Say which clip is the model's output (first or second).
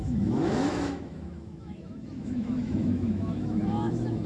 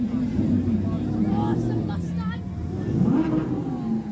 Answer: first